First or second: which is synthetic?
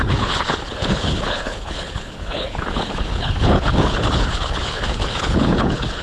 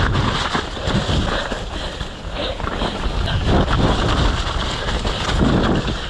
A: first